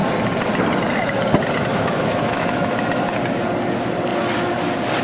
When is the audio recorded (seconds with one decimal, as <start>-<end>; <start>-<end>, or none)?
0.0-1.7; 2.7-5.0